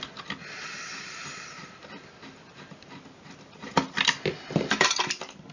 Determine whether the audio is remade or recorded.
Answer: recorded